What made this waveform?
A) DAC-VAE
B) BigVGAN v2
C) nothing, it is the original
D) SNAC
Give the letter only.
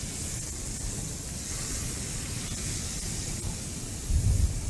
C